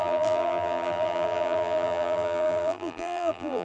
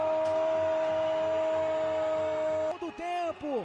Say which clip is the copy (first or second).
first